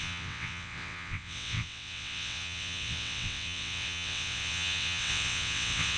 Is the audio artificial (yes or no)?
yes